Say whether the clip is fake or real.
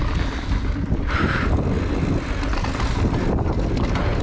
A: real